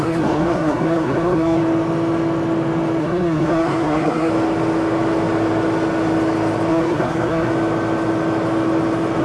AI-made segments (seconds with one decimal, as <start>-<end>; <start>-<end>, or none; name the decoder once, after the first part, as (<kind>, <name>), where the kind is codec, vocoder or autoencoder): 0.0-1.6 (codec, SNAC); 3.0-4.3; 6.7-7.5